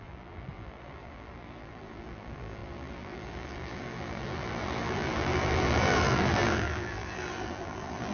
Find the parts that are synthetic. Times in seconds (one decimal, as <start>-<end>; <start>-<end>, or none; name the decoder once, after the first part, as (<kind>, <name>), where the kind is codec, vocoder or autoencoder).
0.0-8.1 (vocoder, BigVGAN v2)